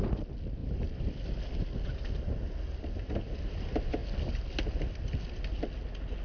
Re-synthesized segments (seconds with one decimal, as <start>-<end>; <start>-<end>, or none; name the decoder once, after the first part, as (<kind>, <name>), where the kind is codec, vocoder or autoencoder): 0.6-1.5 (vocoder, BigVGAN v2)